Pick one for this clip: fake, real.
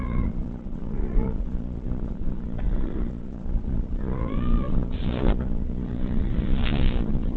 fake